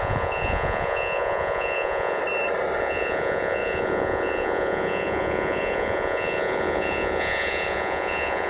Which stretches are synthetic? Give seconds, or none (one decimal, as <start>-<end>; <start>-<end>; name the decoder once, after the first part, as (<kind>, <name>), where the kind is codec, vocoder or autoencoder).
0.0-2.2 (vocoder, Vocos); 2.8-8.5